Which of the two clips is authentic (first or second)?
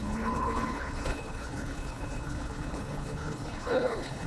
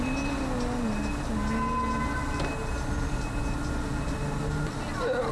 second